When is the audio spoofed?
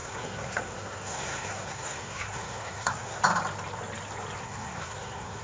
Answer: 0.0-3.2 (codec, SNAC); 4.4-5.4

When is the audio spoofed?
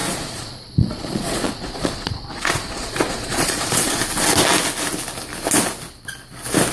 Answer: 0.0-4.0 (vocoder, Vocos)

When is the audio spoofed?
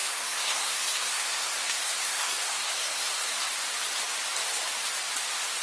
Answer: 0.0-3.4 (codec, SNAC)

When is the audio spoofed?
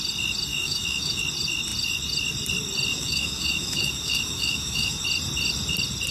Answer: 0.5-1.2 (autoencoder, DAC-VAE); 2.9-5.0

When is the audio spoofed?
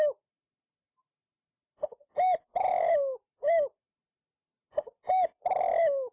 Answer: 0.9-3.2 (vocoder, BigVGAN v2)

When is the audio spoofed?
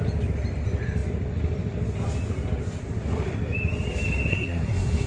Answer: 4.3-5.1 (codec, SNAC)